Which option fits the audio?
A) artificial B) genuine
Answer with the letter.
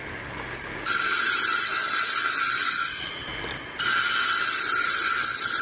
B